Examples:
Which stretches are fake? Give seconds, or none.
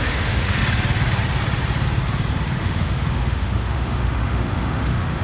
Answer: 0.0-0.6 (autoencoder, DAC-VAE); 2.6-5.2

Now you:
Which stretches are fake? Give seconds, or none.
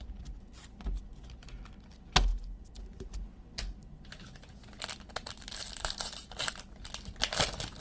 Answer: none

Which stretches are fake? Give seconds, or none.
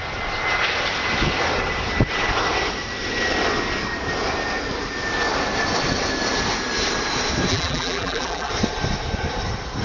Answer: 7.5-8.5 (vocoder, BigVGAN v2)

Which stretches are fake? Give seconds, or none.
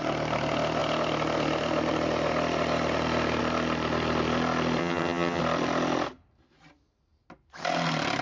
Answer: 4.8-5.4 (vocoder, HiFi-GAN)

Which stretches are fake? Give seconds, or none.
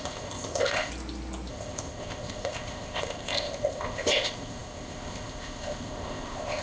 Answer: 0.0-0.9 (codec, ZipCodec); 1.5-6.6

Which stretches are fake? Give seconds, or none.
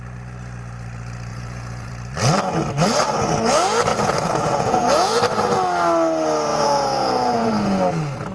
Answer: 1.3-1.9 (vocoder, Vocos); 3.9-5.2; 6.5-7.5